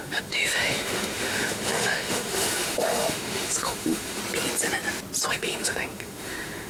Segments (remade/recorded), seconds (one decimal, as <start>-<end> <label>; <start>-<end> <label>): 0.0-4.2 remade; 4.2-5.3 recorded; 5.3-6.7 remade